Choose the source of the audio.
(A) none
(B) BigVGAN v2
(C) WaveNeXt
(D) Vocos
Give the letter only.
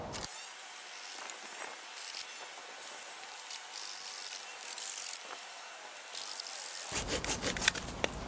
A